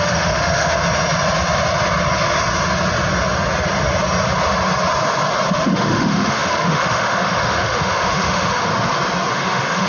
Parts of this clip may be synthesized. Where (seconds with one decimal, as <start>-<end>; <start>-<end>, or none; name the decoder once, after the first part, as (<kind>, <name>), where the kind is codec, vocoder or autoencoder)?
0.0-0.8 (autoencoder, DAC-VAE); 5.5-8.7; 9.3-9.9